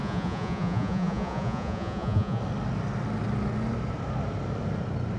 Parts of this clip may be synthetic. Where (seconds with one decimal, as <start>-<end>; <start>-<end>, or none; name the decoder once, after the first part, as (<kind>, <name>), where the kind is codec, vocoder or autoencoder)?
0.0-2.4 (vocoder, Vocos)